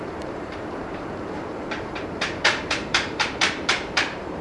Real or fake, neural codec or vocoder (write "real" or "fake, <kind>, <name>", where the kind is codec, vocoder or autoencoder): fake, vocoder, BigVGAN v2